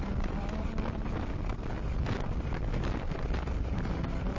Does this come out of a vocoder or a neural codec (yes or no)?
no